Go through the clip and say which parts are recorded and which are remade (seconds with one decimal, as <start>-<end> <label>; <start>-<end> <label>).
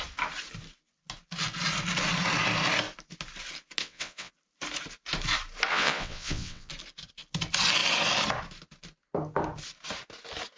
0.0-3.8 recorded; 3.8-4.3 remade; 4.3-5.7 recorded; 5.7-6.7 remade; 6.7-10.6 recorded